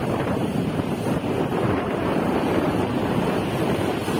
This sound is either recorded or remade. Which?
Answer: remade